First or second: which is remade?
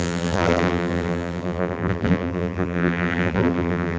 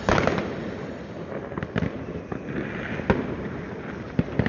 first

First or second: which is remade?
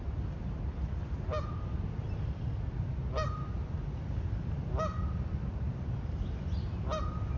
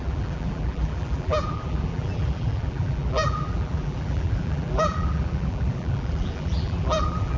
second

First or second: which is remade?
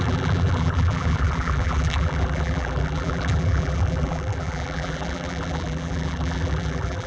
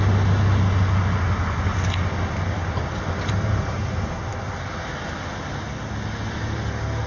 first